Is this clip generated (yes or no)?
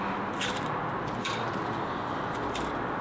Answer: no